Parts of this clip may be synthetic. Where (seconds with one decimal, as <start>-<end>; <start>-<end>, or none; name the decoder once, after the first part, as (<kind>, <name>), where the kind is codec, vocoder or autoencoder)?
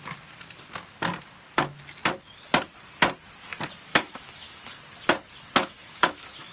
3.9-4.7 (autoencoder, DAC-VAE); 5.6-6.5